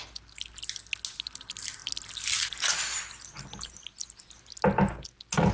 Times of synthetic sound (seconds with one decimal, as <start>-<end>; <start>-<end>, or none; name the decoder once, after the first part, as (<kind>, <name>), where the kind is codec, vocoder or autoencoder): none